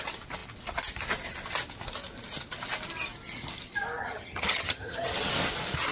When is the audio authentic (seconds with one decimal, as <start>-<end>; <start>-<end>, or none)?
0.0-4.0; 5.3-5.9